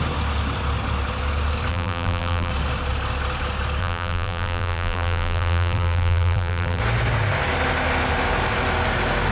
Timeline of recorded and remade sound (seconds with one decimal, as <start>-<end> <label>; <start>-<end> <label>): 0.0-1.7 recorded; 1.7-2.5 remade; 2.5-3.8 recorded; 3.8-6.8 remade; 6.8-9.3 recorded